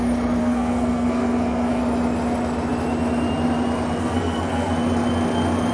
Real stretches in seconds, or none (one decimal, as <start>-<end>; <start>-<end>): 0.0-0.4; 1.8-4.0; 4.7-5.7